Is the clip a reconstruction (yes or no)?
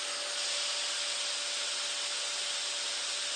no